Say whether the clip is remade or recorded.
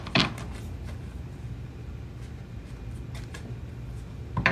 recorded